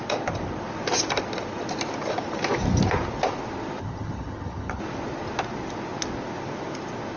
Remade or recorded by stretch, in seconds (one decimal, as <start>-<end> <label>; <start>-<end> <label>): 0.0-3.8 recorded; 3.8-4.8 remade; 4.8-7.2 recorded